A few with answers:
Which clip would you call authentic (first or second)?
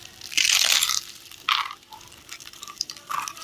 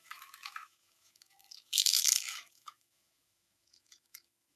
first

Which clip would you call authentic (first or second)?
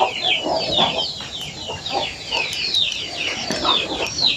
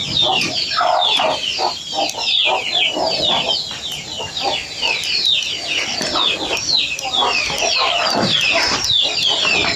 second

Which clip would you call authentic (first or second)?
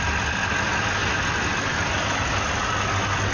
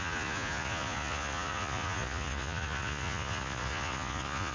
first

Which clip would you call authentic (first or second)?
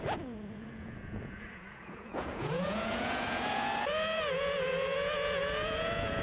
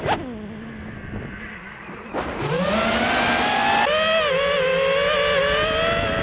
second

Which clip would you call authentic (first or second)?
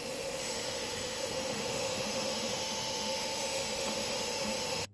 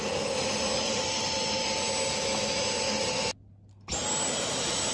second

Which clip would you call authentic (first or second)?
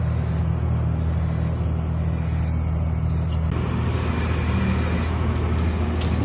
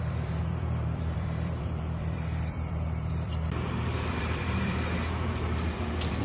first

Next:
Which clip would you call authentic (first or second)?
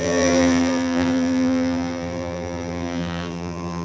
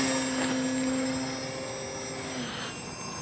second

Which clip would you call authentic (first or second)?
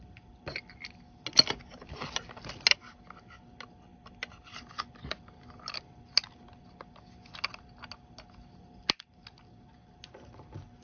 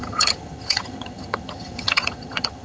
first